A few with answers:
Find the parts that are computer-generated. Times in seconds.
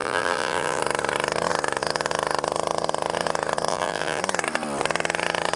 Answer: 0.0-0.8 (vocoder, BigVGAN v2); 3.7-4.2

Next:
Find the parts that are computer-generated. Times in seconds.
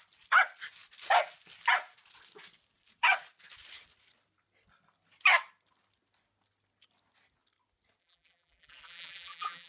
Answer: 8.0-9.7 (vocoder, BigVGAN v2)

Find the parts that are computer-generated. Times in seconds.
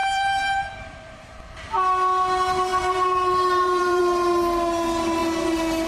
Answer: 0.0-1.4 (vocoder, BigVGAN v2); 2.7-4.0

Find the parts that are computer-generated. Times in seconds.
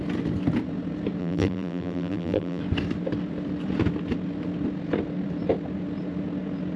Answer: 1.2-2.6 (vocoder, BigVGAN v2)